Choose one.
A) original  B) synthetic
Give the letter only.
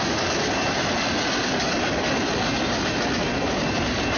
A